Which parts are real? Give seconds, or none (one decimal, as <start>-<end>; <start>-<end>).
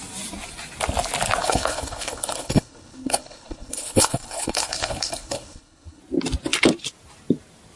0.0-1.4; 6.0-7.8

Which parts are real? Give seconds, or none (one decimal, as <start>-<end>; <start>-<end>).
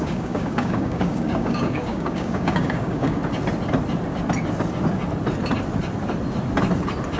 3.2-7.2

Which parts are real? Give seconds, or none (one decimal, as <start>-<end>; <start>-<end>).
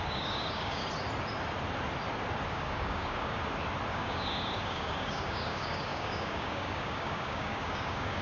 0.8-2.5; 3.4-3.9